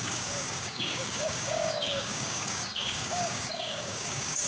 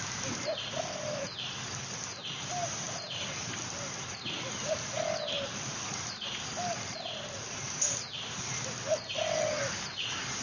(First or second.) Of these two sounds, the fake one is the first